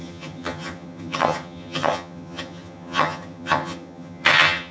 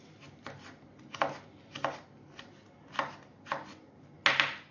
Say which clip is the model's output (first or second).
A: first